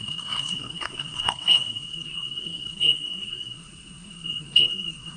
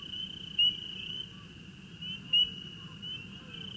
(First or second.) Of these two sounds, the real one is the second